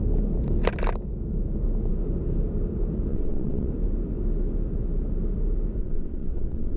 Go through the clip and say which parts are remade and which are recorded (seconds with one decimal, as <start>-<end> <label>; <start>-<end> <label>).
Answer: 0.0-3.1 recorded; 3.1-3.7 remade; 3.7-5.8 recorded; 5.8-6.8 remade

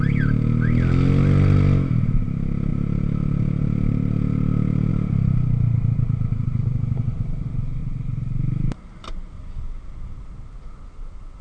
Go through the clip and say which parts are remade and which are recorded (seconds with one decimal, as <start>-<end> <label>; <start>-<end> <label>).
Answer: 0.0-11.4 recorded

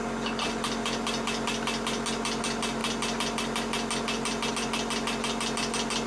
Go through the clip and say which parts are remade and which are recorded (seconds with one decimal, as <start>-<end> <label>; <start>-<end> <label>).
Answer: 0.0-6.1 recorded

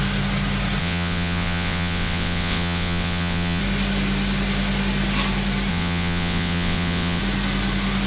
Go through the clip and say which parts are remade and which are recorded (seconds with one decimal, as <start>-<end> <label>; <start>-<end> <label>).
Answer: 0.0-0.8 recorded; 0.8-3.6 remade; 3.6-5.7 recorded; 5.7-7.2 remade; 7.2-8.1 recorded

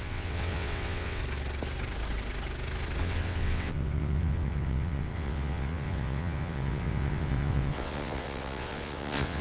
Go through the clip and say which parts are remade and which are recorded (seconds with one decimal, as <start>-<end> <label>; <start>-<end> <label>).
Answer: 0.0-1.2 remade; 1.2-3.0 recorded; 3.0-9.4 remade